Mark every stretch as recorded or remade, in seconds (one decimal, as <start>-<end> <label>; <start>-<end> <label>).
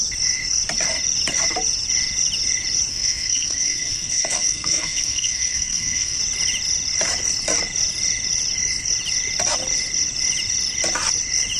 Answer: 0.0-2.9 recorded; 2.9-6.2 remade; 6.2-11.6 recorded